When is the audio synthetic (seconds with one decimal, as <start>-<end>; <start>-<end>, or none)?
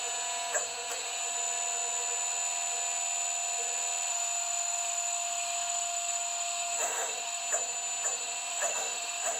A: 4.1-7.4; 8.5-9.4